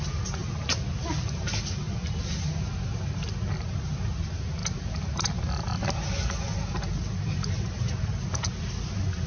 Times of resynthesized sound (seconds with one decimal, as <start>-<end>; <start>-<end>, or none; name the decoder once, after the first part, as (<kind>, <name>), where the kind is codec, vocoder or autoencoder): none